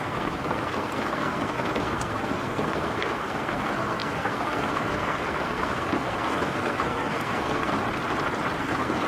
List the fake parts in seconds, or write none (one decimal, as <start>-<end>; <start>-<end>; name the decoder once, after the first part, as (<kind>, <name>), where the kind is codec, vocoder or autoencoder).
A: 0.0-7.7 (codec, SNAC); 8.6-9.1